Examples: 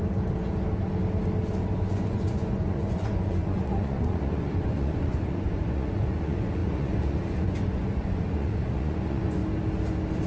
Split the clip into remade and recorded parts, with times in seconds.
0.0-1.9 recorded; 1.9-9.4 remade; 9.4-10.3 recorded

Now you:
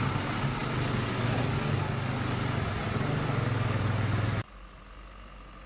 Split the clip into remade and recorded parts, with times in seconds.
0.0-5.7 recorded

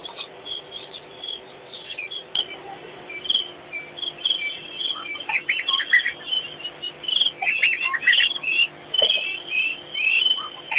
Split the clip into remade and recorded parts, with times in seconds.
0.0-3.1 remade; 3.1-10.8 recorded